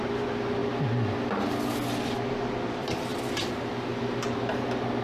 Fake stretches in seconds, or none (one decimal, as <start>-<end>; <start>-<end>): 0.0-0.6; 2.3-5.0